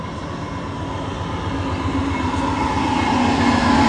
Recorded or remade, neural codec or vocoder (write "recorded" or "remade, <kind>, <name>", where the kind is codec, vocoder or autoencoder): recorded